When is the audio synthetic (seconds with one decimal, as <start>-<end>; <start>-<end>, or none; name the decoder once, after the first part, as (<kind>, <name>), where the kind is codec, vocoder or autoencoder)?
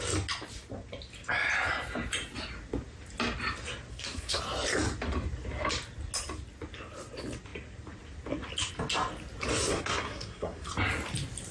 3.9-4.4 (codec, SNAC); 9.7-10.7